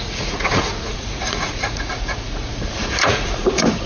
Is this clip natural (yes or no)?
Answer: no